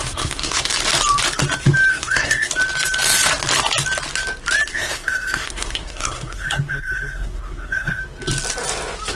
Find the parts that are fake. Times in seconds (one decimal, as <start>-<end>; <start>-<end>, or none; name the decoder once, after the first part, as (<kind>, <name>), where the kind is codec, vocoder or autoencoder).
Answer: 0.0-0.6 (codec, SNAC); 1.9-2.5; 4.7-8.0